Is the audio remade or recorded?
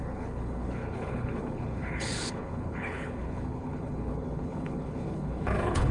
remade